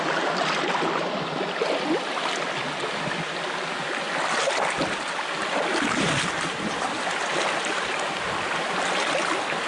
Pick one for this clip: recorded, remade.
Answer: recorded